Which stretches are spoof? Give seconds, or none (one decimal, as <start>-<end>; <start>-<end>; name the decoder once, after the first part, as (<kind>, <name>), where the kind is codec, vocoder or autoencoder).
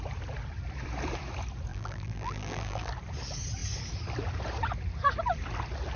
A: 1.7-2.9 (vocoder, BigVGAN v2)